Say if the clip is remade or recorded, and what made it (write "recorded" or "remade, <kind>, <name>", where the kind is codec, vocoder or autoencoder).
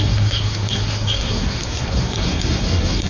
remade, codec, SNAC